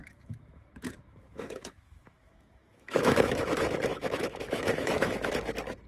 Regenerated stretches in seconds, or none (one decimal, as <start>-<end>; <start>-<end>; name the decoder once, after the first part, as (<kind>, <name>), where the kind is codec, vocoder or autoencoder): 0.0-3.5 (autoencoder, DAC-VAE); 3.9-5.3